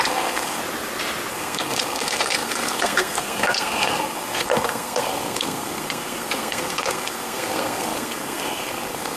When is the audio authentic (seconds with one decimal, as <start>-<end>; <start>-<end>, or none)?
0.6-1.3